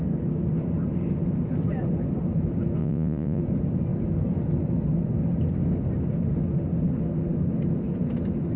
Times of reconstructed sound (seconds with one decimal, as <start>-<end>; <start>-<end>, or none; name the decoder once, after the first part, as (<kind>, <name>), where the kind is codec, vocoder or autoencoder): 2.8-3.4 (vocoder, Vocos)